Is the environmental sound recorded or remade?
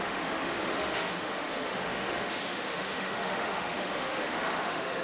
remade